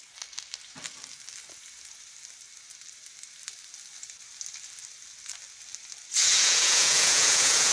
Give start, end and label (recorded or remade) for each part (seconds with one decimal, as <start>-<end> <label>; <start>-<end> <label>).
0.0-6.2 recorded; 6.2-7.7 remade